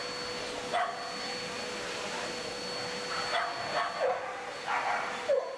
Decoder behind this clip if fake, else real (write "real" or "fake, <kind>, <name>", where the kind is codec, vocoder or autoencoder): real